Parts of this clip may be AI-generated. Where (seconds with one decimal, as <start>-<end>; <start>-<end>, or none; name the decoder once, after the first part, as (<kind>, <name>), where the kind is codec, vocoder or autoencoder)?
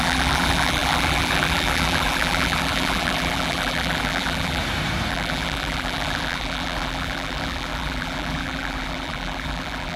0.0-4.6 (vocoder, BigVGAN v2); 5.1-10.0